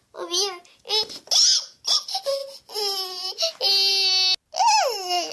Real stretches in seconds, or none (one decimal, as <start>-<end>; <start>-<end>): 0.0-5.3